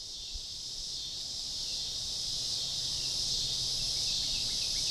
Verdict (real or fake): fake